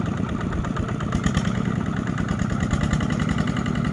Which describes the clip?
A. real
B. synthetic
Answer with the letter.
A